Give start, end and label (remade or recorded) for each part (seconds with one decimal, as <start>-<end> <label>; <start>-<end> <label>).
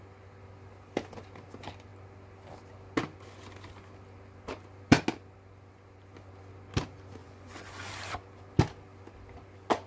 0.0-7.2 recorded; 7.2-7.9 remade; 7.9-9.9 recorded